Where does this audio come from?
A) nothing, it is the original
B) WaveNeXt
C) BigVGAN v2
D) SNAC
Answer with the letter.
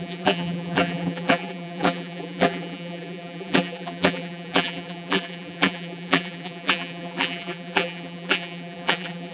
C